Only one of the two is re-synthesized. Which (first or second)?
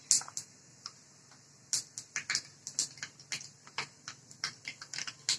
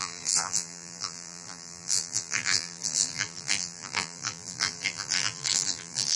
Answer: second